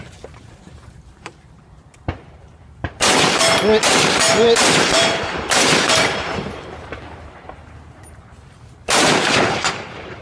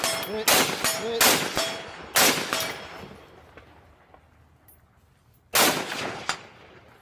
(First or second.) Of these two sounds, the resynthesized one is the first